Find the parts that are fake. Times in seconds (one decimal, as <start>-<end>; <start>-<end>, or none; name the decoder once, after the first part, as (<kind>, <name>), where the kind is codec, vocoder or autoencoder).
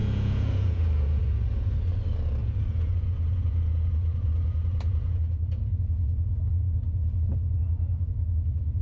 0.0-1.2 (vocoder, Vocos); 2.4-6.4